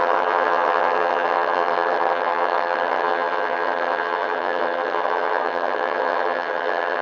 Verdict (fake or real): fake